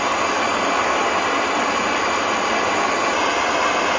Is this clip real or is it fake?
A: real